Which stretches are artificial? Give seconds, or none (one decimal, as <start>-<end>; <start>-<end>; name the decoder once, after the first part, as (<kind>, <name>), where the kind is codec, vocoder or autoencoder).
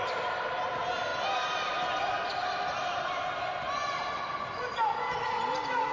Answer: none